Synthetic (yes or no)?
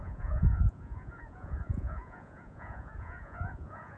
yes